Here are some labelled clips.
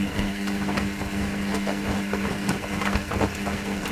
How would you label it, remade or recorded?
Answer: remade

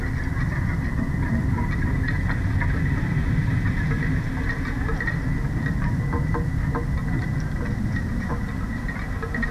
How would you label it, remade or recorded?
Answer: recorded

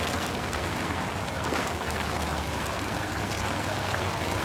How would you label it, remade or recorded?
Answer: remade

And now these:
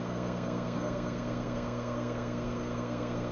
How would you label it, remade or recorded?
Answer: remade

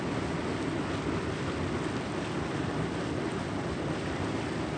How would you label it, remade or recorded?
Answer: recorded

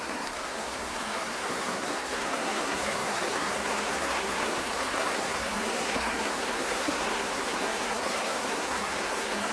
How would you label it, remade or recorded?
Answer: remade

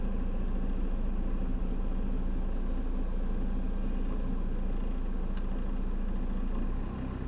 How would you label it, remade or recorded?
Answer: recorded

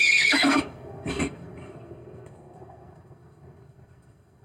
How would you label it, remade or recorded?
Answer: remade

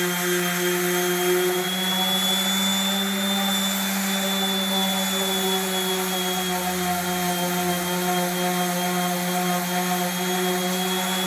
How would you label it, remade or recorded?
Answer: recorded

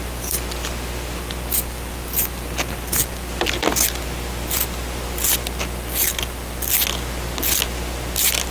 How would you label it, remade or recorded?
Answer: recorded